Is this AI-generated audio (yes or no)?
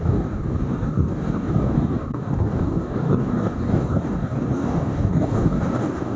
yes